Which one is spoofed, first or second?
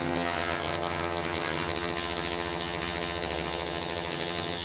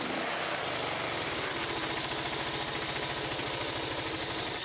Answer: first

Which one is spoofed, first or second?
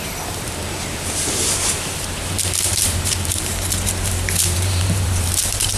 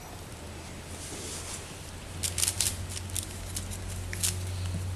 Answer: first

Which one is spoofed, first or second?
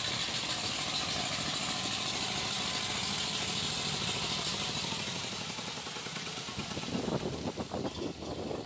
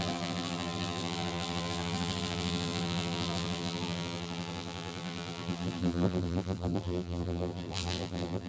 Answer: second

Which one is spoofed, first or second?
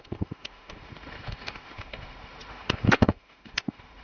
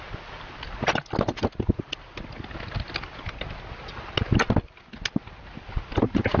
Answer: first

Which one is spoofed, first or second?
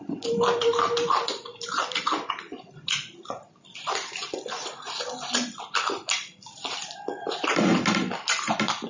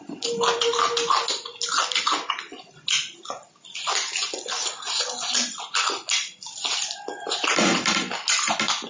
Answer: first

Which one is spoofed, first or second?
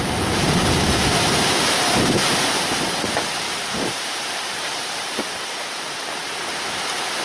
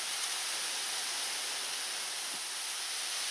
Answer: first